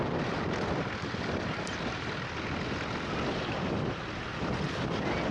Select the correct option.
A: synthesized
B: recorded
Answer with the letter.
B